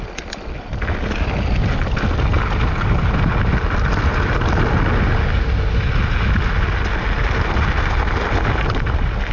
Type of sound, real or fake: real